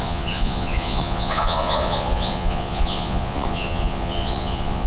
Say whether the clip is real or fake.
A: fake